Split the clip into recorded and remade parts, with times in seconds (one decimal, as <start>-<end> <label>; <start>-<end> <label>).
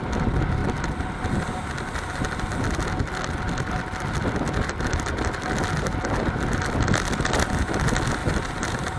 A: 0.0-8.2 recorded; 8.2-9.0 remade